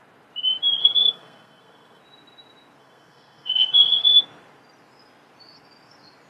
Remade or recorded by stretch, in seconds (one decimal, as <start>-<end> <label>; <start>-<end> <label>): 0.0-0.8 recorded; 0.8-2.0 remade; 2.0-2.8 recorded; 2.8-4.2 remade; 4.2-6.3 recorded